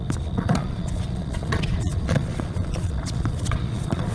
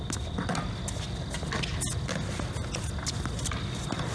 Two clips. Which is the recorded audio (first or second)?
second